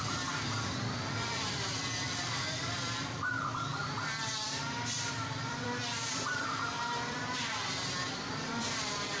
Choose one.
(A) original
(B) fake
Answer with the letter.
B